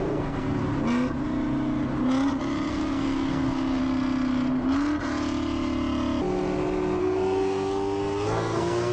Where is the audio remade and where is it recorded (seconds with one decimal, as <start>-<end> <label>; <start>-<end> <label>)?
0.0-0.6 remade; 0.6-2.7 recorded; 2.7-3.8 remade; 3.8-7.0 recorded; 7.0-8.9 remade